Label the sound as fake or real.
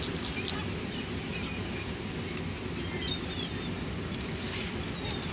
real